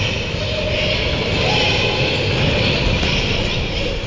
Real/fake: real